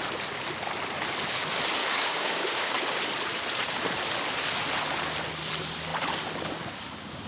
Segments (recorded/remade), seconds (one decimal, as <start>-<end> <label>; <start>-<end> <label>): 0.0-1.8 recorded; 1.8-3.0 remade; 3.0-7.3 recorded